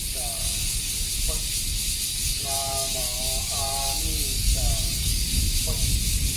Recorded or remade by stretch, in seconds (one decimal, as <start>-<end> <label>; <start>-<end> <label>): 0.0-0.4 recorded; 0.4-0.9 remade; 0.9-2.1 recorded; 2.1-5.4 remade; 5.4-6.4 recorded

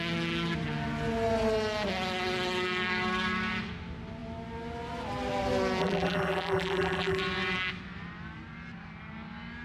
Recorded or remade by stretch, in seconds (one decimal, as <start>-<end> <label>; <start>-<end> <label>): 0.0-5.8 recorded; 5.8-7.2 remade; 7.2-9.6 recorded

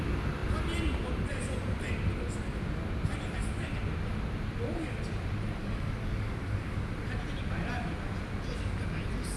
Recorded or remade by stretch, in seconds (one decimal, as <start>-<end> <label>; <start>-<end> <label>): 0.0-5.6 recorded; 5.6-6.9 remade; 6.9-9.4 recorded